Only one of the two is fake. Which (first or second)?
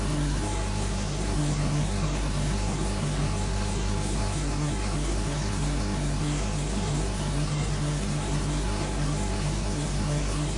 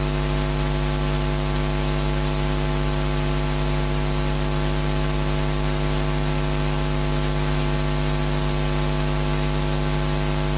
first